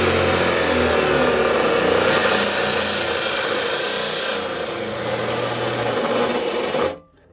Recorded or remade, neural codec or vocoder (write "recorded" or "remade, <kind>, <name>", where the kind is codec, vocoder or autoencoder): recorded